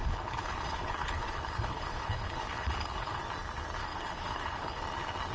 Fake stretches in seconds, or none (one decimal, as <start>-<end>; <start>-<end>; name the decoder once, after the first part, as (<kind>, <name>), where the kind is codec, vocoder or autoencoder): 0.0-3.2 (codec, HILCodec); 3.8-4.8